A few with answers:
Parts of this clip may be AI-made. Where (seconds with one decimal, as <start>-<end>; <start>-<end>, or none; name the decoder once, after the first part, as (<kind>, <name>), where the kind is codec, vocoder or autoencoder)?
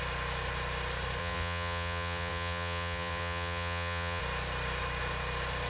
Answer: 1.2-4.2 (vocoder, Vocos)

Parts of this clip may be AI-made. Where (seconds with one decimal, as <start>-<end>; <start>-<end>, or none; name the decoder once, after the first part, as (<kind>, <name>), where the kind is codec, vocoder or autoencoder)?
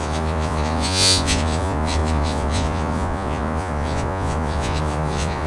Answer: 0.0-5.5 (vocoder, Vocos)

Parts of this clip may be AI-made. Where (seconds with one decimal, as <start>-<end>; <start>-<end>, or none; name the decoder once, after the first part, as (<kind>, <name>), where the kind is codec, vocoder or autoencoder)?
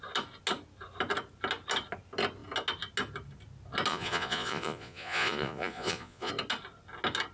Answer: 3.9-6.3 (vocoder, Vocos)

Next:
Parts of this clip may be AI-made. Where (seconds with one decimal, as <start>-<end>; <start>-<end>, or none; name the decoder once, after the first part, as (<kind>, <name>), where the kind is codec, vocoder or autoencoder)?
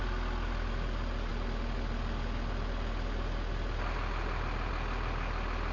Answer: none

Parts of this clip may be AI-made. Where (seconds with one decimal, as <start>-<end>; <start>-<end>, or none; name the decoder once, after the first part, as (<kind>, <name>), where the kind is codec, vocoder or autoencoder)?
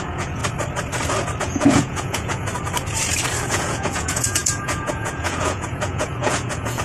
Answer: 0.0-0.4 (vocoder, Vocos); 1.4-2.5; 3.4-6.8